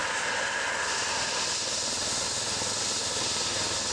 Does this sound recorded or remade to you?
recorded